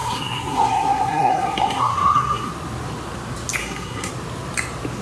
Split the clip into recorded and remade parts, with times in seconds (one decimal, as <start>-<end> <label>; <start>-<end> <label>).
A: 0.0-2.5 remade; 2.5-3.6 recorded; 3.6-4.1 remade; 4.1-5.0 recorded